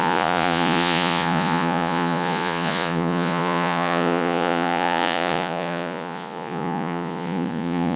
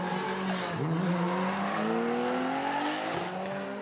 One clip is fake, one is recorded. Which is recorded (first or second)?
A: second